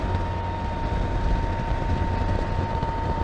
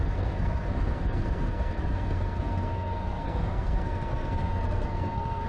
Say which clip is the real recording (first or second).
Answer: first